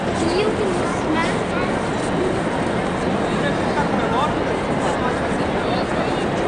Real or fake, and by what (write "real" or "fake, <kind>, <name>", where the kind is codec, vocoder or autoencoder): real